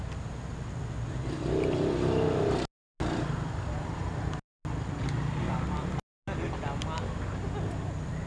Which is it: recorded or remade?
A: recorded